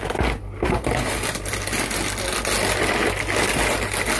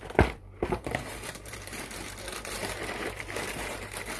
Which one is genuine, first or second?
first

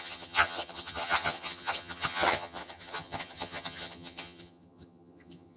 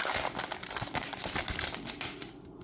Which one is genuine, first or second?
second